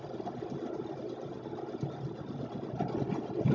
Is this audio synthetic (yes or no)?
no